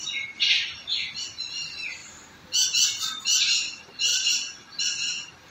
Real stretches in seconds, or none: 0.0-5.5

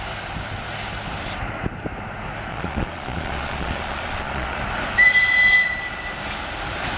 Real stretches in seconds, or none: 0.0-2.5; 4.6-7.0

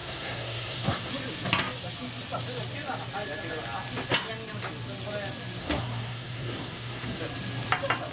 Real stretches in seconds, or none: 1.1-5.6; 7.2-8.1

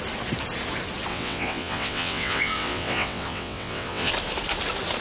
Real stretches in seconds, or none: 0.0-1.1; 4.1-5.0

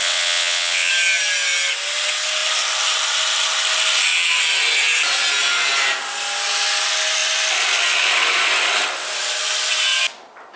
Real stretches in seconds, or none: 0.9-10.6

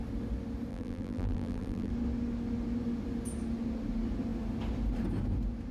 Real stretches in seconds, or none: 0.0-0.7; 1.9-5.7

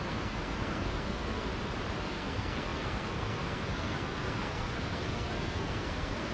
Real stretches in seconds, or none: 1.5-2.0